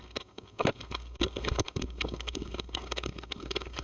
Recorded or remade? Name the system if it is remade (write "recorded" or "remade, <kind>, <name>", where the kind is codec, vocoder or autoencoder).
remade, codec, SNAC